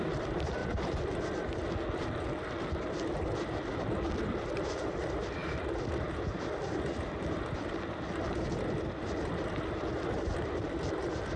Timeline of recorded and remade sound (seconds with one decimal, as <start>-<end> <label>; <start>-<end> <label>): 0.0-0.6 remade; 0.6-3.8 recorded; 3.8-5.4 remade; 5.4-7.2 recorded; 7.2-11.4 remade